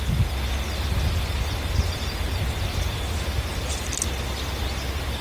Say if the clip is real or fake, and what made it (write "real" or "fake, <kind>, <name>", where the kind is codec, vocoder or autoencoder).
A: real